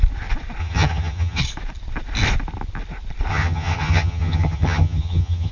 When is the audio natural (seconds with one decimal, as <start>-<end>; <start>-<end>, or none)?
0.0-0.6; 1.4-3.3